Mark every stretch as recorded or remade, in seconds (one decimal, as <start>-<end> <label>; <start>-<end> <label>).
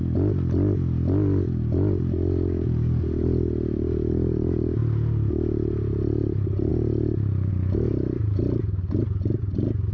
0.0-9.9 recorded